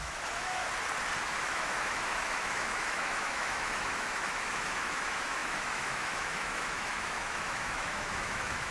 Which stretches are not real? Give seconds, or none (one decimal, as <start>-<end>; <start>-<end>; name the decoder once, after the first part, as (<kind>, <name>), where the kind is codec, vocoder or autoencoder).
0.0-0.6 (autoencoder, DAC-VAE); 1.2-8.7